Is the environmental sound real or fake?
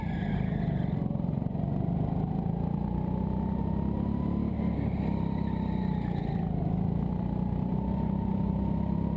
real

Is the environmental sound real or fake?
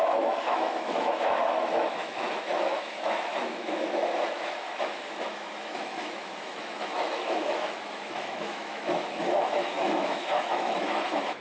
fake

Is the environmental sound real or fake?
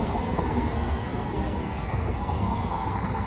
fake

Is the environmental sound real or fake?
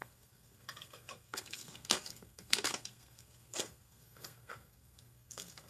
fake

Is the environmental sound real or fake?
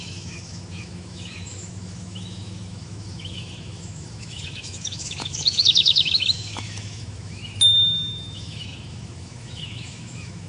fake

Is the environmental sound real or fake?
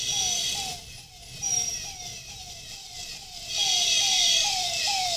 fake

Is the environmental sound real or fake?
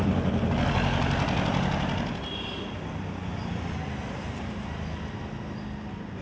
real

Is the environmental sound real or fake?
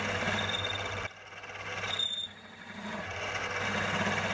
real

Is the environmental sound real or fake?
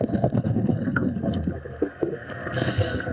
fake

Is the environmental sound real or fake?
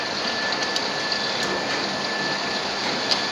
real